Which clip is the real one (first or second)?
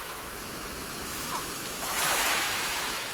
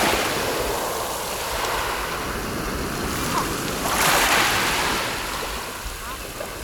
second